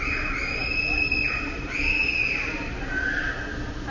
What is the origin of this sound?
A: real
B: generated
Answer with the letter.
A